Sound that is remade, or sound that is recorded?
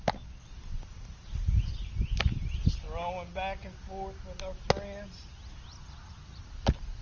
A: recorded